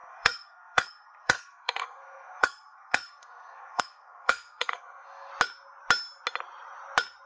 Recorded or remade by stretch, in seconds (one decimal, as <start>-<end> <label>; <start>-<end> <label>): 0.0-5.3 remade; 5.3-7.3 recorded